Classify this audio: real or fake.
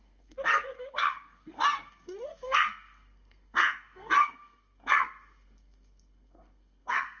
fake